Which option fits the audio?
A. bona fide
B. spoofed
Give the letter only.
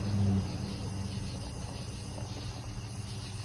A